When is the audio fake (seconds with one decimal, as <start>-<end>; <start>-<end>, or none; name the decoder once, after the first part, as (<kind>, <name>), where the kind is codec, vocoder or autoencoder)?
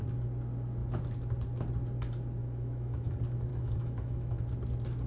2.4-3.1 (autoencoder, DAC-VAE); 3.5-4.4